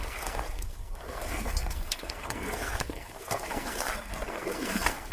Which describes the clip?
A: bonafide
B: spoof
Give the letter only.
B